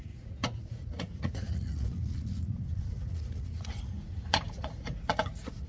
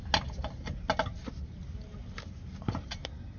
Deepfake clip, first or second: first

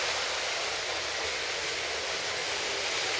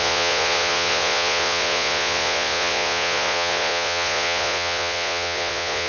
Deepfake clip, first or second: second